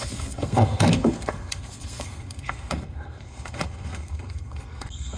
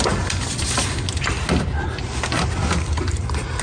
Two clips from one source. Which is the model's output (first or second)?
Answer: first